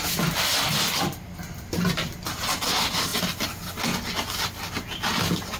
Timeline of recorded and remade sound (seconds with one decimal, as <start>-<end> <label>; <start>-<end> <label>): 0.0-5.6 recorded